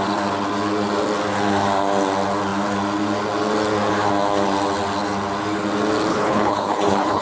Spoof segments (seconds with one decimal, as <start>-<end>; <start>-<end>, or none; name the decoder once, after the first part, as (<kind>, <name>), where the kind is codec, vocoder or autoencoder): 6.1-7.2 (codec, HILCodec)